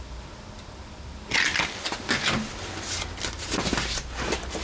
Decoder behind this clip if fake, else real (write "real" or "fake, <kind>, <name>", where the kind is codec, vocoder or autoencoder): real